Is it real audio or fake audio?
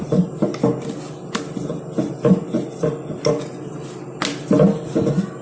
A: real